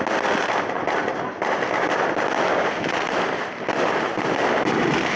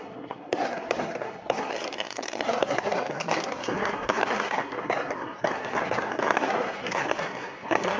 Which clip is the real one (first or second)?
first